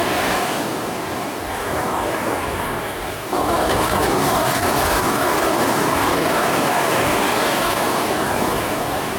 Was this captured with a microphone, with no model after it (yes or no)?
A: no